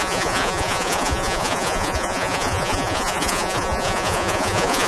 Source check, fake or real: fake